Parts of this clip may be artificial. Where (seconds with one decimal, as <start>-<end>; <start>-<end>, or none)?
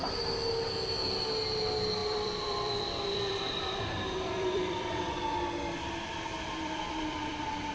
2.0-5.1; 6.3-7.7